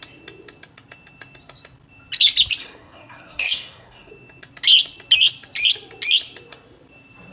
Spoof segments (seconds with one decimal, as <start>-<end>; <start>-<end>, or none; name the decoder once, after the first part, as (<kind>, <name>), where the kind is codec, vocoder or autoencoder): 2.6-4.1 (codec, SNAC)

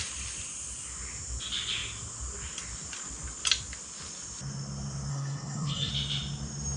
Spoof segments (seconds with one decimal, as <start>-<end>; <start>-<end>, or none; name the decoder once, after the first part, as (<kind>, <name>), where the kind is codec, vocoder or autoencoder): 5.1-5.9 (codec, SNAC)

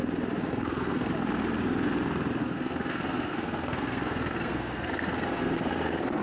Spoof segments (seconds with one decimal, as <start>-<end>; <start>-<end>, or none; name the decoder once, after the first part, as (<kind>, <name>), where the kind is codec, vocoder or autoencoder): 0.4-1.1 (codec, SNAC); 2.4-6.2

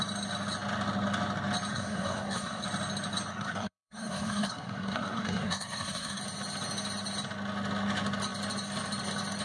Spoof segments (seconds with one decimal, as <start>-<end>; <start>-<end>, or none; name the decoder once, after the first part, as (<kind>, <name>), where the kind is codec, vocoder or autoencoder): 1.7-2.6 (codec, SNAC); 3.3-6.2

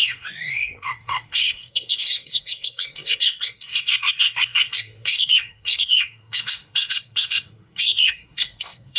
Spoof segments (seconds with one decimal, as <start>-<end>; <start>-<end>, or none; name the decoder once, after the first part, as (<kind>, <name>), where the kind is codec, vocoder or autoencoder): 0.0-9.0 (codec, SNAC)

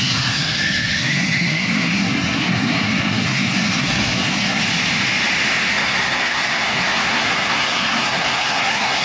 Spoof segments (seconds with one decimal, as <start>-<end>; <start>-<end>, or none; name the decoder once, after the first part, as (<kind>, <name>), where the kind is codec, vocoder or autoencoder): 0.0-4.6 (codec, SNAC); 5.7-9.0

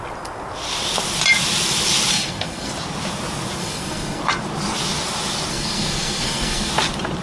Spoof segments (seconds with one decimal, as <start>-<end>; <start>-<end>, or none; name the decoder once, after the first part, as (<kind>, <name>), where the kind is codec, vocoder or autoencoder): 2.1-2.7 (codec, SNAC); 3.6-4.2; 5.5-6.7